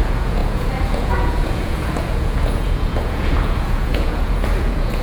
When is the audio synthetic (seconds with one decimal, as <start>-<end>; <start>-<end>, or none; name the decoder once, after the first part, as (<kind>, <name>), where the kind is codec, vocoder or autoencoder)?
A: 0.0-5.0 (vocoder, Vocos)